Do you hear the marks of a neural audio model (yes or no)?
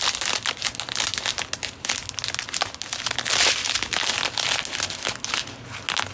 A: no